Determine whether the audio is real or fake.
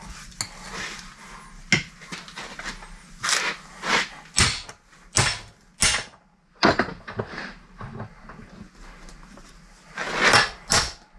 real